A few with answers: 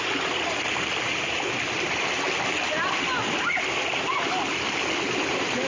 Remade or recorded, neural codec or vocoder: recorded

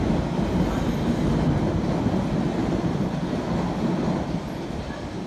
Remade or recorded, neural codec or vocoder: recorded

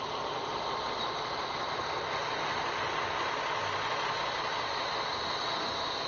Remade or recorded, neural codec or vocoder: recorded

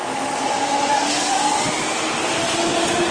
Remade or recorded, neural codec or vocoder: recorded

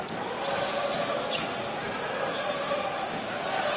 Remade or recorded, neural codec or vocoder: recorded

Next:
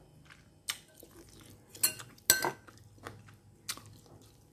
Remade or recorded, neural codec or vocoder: recorded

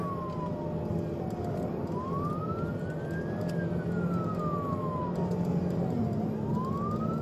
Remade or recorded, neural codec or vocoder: recorded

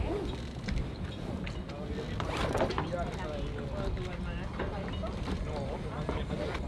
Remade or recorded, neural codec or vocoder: recorded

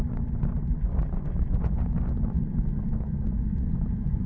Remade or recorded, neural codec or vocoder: remade, vocoder, Vocos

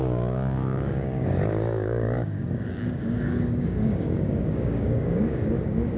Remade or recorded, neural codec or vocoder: remade, codec, DAC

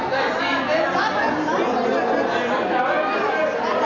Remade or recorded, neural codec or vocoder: recorded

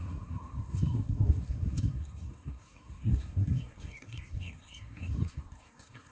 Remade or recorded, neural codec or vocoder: remade, codec, SNAC